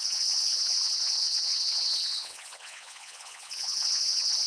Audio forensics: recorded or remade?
remade